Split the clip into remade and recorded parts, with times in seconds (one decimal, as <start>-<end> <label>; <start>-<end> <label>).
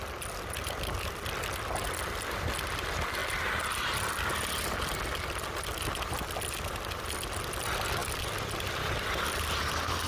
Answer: 0.0-8.0 recorded; 8.0-9.6 remade; 9.6-10.1 recorded